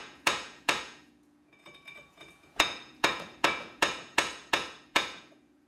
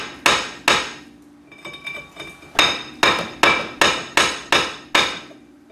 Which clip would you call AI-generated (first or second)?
first